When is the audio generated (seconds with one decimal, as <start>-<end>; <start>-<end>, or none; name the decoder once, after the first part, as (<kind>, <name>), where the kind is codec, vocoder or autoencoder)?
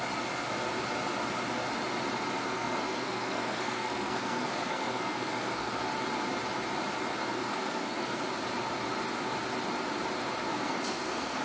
2.4-5.8 (codec, SNAC); 7.2-8.2; 10.5-11.4